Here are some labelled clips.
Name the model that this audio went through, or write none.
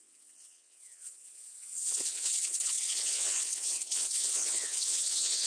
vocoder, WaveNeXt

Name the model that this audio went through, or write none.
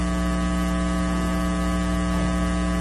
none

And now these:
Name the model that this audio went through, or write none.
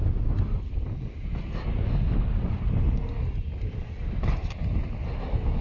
none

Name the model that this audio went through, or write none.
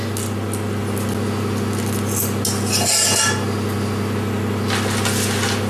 none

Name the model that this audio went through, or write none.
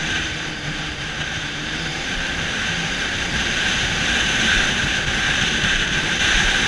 vocoder, BigVGAN v2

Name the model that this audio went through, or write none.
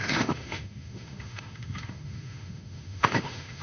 autoencoder, DAC-VAE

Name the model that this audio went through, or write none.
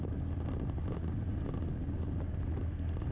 none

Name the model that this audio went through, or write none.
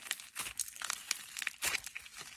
none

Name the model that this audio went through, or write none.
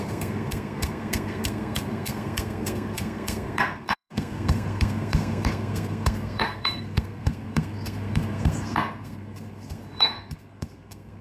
codec, SNAC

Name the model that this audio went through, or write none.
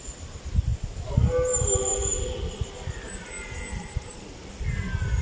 none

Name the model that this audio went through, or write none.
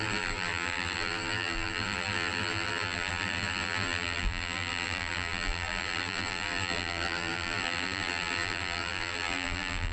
vocoder, BigVGAN v2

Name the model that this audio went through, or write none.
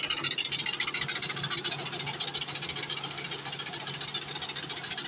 none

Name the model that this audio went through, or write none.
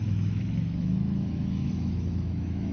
autoencoder, DAC-VAE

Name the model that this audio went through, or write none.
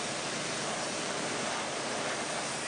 vocoder, BigVGAN v2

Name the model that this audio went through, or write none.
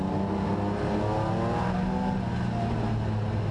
none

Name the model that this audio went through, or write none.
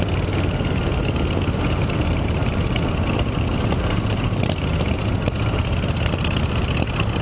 none